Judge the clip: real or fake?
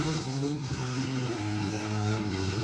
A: fake